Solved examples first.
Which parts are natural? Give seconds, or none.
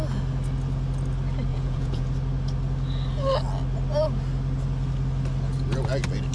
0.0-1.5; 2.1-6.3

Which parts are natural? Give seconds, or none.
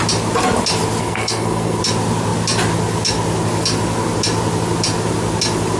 0.0-1.0; 1.8-5.8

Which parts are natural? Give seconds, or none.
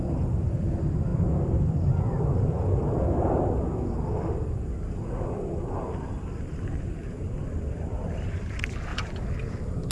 0.0-9.9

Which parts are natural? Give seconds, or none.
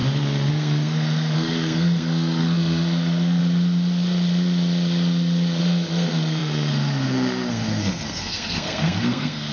0.0-0.5; 3.4-5.6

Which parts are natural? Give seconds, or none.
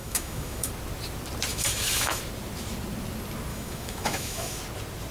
0.7-1.5; 2.2-3.5; 4.6-5.1